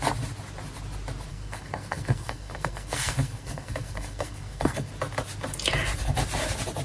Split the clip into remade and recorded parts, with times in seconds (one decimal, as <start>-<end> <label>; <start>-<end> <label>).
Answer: 0.0-1.3 recorded; 1.3-4.9 remade; 4.9-6.8 recorded